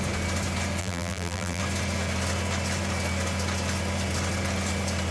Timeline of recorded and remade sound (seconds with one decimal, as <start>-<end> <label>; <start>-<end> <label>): 0.0-0.8 recorded; 0.8-1.6 remade; 1.6-5.1 recorded